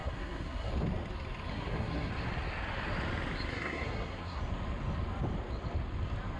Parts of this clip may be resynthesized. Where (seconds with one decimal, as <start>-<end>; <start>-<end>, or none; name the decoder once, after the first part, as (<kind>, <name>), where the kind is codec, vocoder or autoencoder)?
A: 0.0-0.7 (codec, SNAC); 1.5-2.1; 3.5-4.4